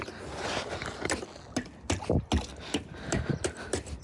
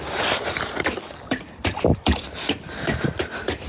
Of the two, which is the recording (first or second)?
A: first